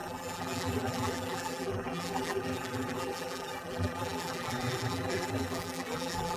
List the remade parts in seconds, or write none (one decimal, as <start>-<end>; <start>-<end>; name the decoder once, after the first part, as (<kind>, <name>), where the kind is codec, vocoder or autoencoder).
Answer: 0.0-6.4 (vocoder, BigVGAN v2)